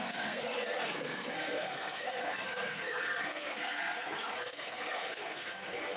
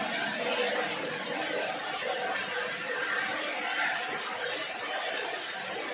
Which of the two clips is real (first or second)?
second